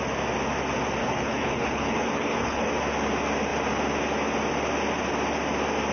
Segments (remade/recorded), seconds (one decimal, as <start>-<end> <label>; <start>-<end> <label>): 0.0-1.0 recorded; 1.0-2.7 remade; 2.7-5.9 recorded